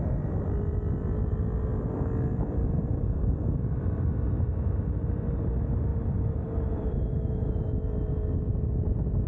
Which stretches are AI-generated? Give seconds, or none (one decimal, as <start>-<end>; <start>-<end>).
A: 1.7-4.3; 5.9-6.9